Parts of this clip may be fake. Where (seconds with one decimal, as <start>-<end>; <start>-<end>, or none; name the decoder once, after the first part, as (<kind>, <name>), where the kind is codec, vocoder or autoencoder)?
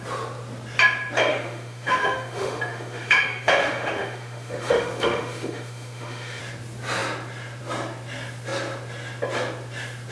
1.3-6.4 (autoencoder, DAC-VAE)